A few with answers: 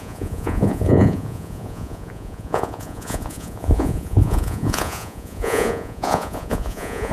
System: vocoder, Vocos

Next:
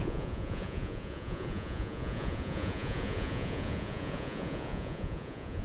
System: vocoder, Vocos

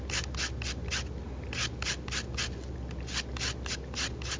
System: none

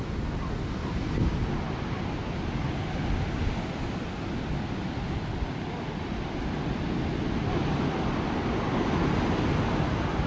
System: none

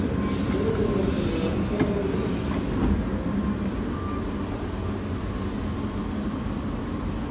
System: none